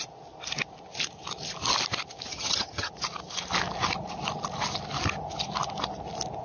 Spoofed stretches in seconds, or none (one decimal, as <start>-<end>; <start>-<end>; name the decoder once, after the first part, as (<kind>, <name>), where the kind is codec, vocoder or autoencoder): 2.3-2.9 (vocoder, HiFi-GAN)